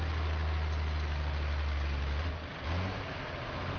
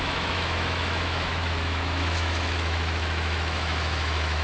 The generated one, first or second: second